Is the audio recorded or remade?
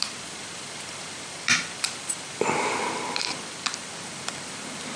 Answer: remade